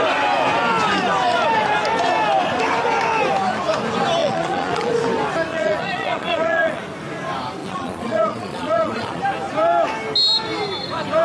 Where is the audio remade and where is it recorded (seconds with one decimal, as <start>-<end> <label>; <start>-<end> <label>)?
0.0-4.2 recorded; 4.2-4.9 remade; 4.9-5.5 recorded; 5.5-6.8 remade; 6.8-7.6 recorded; 7.6-9.2 remade; 9.2-11.2 recorded